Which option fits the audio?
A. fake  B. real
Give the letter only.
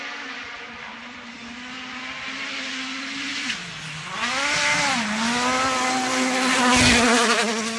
B